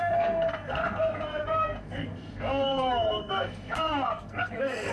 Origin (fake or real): fake